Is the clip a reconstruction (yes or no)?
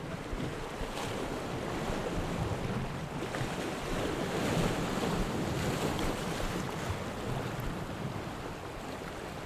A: no